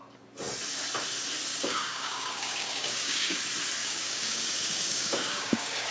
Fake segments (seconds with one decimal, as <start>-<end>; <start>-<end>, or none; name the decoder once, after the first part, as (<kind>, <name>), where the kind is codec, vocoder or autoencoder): 1.5-3.4 (codec, DAC); 3.8-5.9